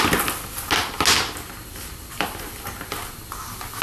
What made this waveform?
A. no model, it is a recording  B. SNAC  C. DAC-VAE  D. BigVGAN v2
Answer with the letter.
A